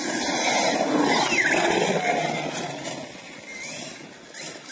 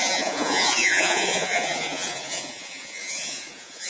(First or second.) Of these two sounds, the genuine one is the first